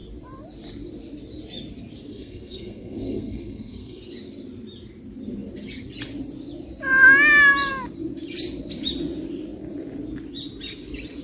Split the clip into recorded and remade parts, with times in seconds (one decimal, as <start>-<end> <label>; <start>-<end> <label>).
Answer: 0.0-2.1 recorded; 2.1-4.0 remade; 4.0-11.2 recorded